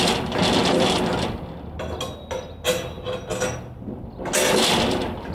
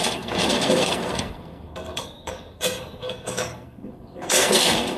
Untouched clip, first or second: first